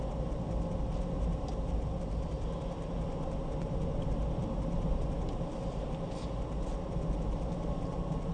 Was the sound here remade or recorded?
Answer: recorded